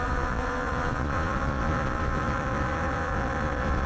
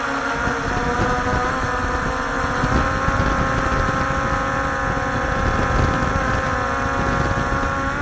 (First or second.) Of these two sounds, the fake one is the first